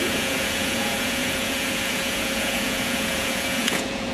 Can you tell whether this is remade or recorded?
remade